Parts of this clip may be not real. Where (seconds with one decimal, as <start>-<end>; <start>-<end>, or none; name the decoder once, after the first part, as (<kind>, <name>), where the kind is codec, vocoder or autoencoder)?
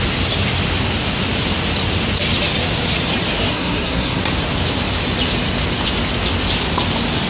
3.5-4.2 (codec, SNAC)